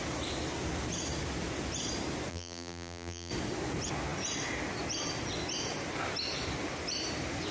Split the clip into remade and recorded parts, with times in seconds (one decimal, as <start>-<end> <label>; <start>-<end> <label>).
0.0-2.3 recorded; 2.3-3.3 remade; 3.3-7.5 recorded